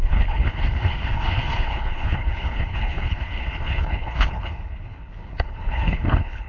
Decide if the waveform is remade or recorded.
remade